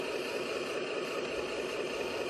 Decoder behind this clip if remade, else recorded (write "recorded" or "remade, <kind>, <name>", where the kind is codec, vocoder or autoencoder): recorded